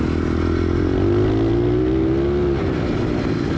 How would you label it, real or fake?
real